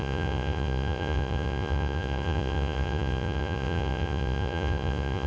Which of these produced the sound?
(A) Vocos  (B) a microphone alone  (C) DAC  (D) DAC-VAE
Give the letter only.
A